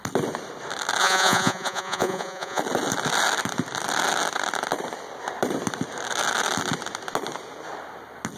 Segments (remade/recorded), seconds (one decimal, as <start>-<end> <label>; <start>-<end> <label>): 0.0-1.0 recorded; 1.0-2.6 remade; 2.6-8.4 recorded